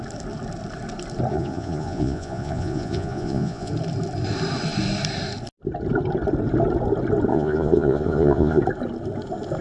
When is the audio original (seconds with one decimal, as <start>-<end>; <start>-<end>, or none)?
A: 0.0-1.3; 3.7-7.3; 8.6-9.6